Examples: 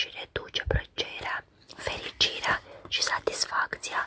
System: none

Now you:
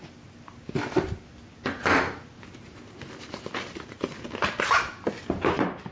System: none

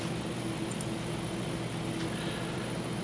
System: none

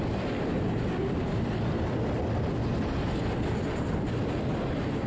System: none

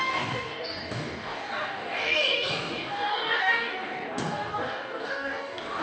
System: codec, DAC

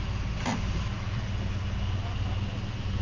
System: none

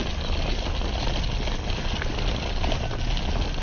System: none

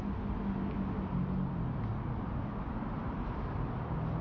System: none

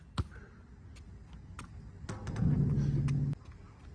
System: none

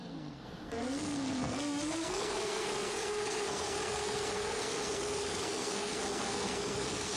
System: codec, SNAC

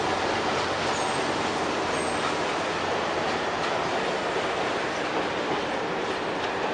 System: none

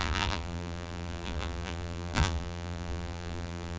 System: vocoder, BigVGAN v2